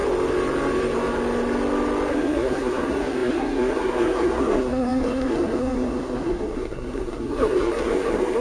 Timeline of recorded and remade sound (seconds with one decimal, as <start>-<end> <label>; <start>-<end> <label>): 0.0-2.1 recorded; 2.1-8.4 remade